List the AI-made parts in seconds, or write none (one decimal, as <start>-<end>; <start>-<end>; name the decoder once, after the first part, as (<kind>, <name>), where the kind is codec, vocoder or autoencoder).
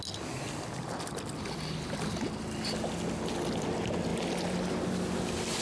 none